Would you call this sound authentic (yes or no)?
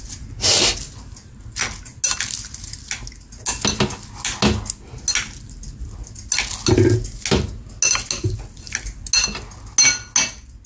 yes